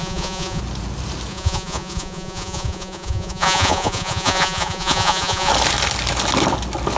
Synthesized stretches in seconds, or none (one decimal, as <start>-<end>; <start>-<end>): 0.0-0.6; 1.3-5.5